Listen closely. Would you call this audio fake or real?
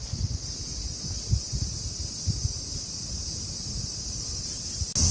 real